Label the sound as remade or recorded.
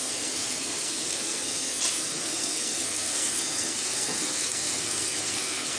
remade